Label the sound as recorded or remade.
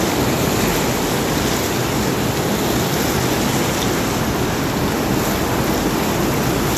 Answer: recorded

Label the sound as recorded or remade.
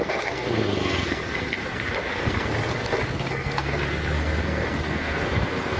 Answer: remade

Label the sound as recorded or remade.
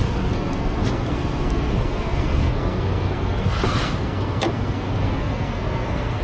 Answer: remade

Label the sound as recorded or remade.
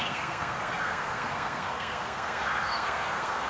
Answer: remade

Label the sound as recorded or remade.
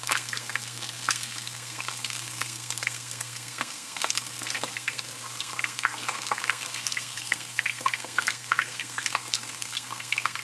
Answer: remade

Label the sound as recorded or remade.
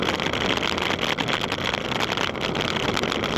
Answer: recorded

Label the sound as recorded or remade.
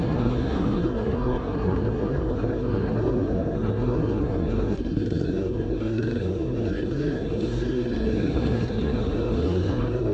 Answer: remade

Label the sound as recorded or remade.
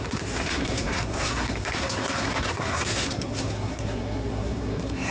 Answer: remade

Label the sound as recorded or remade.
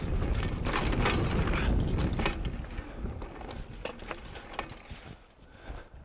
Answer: recorded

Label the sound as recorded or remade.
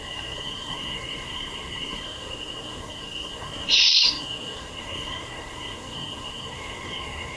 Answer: remade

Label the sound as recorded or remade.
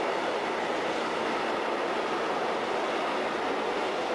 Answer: recorded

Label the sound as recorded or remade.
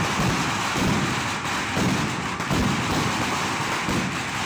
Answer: recorded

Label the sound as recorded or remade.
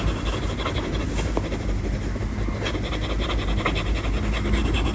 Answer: recorded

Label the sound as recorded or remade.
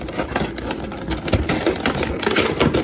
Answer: recorded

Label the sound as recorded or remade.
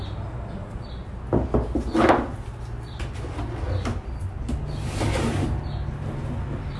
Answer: recorded